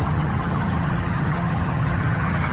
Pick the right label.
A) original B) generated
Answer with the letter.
B